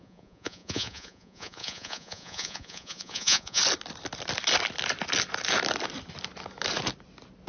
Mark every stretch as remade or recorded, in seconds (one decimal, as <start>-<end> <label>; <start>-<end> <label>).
0.0-3.6 remade; 3.6-7.5 recorded